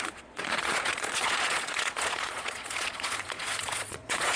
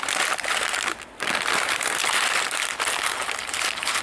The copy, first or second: first